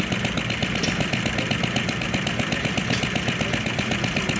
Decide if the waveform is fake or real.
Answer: real